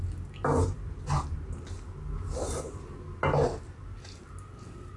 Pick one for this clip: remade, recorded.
recorded